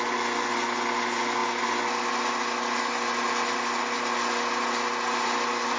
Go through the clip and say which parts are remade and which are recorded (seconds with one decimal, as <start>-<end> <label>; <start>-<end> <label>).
0.0-5.8 recorded